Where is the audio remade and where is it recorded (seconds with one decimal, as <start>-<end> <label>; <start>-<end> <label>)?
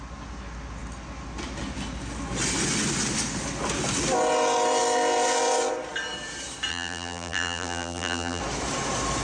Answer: 0.0-6.7 recorded; 6.7-8.4 remade; 8.4-9.2 recorded